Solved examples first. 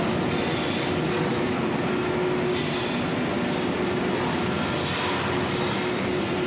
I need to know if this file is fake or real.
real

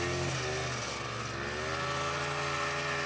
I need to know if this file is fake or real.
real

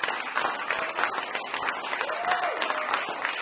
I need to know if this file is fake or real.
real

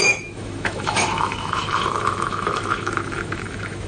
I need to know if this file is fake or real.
fake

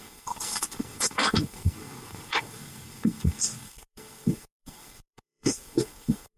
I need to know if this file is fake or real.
fake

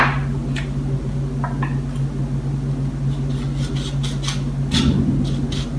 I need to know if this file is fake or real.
real